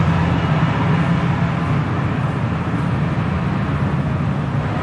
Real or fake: real